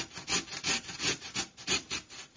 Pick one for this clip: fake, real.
real